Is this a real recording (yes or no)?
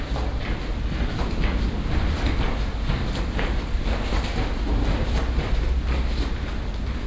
yes